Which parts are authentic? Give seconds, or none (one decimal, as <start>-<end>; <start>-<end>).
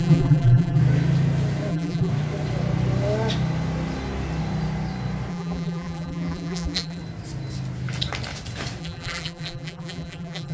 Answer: 0.8-1.7; 2.1-5.3; 7.0-8.8